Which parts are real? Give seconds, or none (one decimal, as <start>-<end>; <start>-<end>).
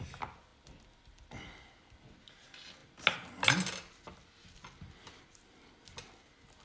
0.0-6.6